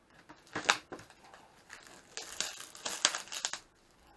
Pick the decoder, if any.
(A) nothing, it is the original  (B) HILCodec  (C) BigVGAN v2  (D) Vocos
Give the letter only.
A